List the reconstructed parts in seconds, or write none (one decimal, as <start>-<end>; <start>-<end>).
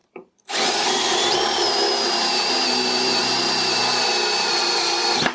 none